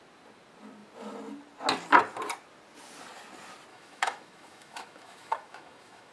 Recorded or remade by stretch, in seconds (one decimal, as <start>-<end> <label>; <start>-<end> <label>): 0.0-3.7 recorded; 3.7-6.1 remade